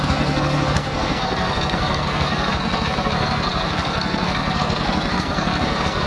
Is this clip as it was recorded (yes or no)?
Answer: no